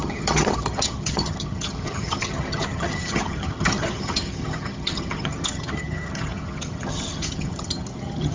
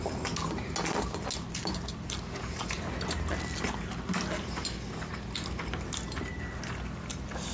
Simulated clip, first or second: first